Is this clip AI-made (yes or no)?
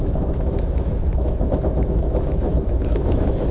yes